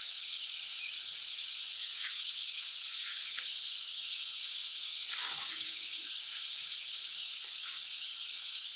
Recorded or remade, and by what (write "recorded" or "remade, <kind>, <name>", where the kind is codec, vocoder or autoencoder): remade, codec, DAC